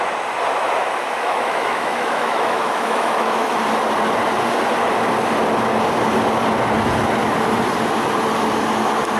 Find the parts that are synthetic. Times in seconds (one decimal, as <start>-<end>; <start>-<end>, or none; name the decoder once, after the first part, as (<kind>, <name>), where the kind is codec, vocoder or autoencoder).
0.8-3.6 (autoencoder, DAC-VAE)